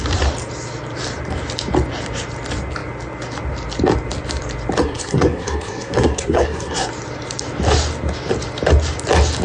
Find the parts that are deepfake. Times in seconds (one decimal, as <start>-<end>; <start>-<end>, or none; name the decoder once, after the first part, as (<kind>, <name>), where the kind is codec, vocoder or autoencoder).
4.8-6.9 (codec, SNAC)